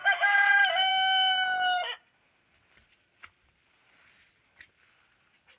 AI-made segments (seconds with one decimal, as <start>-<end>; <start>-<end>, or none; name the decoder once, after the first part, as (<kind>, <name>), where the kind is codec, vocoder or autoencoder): 0.0-0.5 (autoencoder, DAC-VAE)